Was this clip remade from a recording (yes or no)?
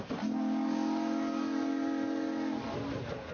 no